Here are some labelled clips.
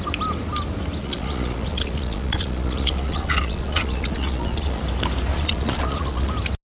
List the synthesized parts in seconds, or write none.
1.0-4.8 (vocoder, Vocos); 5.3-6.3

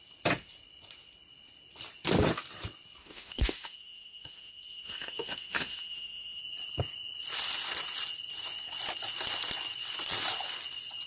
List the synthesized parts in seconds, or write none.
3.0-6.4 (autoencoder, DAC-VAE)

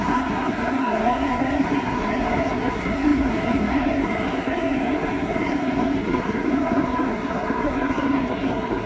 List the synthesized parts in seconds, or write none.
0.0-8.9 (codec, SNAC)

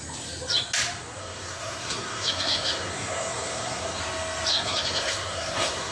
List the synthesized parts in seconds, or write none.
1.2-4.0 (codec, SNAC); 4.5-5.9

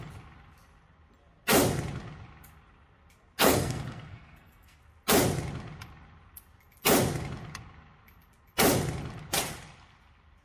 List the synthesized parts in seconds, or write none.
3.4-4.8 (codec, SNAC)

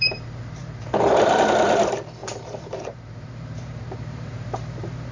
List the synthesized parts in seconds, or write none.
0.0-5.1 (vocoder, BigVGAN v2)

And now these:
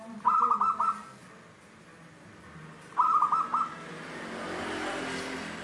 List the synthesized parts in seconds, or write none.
none